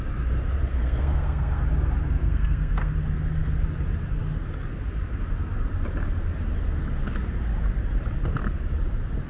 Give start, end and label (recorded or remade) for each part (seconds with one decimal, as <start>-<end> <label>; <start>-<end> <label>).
0.0-0.7 recorded; 0.7-1.6 remade; 1.6-2.2 recorded; 2.2-2.9 remade; 2.9-9.3 recorded